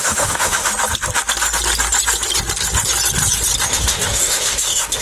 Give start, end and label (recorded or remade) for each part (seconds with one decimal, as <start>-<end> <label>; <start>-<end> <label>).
0.0-0.7 remade; 0.7-3.7 recorded; 3.7-5.0 remade